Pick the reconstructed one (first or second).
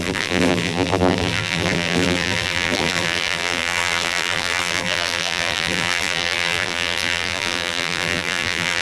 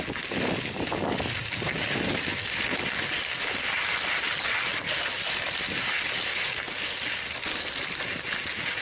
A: first